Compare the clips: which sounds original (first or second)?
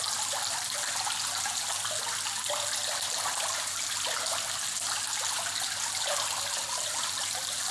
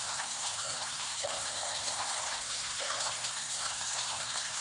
first